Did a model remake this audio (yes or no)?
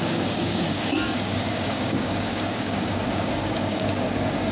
yes